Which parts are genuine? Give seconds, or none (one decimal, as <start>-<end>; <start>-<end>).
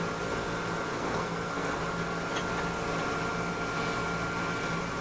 0.0-0.9; 1.8-5.0